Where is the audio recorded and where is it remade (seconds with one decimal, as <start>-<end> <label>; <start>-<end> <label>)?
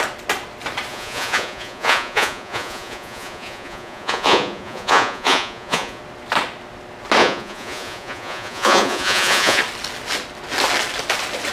0.0-0.9 recorded; 0.9-6.0 remade; 6.0-7.2 recorded; 7.2-9.6 remade; 9.6-11.5 recorded